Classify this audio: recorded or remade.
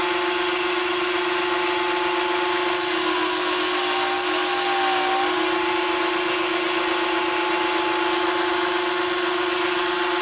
recorded